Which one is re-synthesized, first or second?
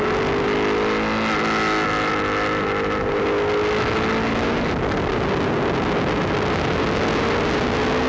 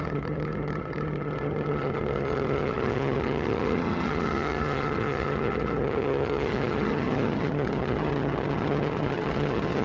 second